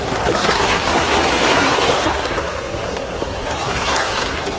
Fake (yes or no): yes